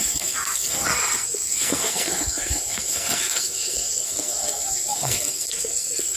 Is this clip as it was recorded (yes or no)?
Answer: no